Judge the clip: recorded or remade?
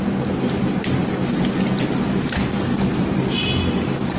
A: recorded